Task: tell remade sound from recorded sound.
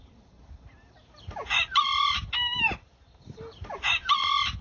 remade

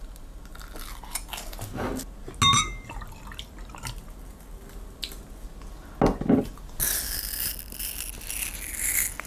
recorded